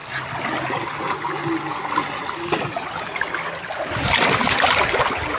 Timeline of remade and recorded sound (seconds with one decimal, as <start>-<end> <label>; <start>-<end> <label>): 0.0-5.4 recorded

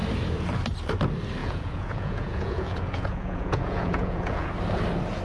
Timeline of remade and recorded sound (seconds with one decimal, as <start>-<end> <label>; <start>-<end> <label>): 0.0-1.4 recorded; 1.4-4.5 remade; 4.5-5.2 recorded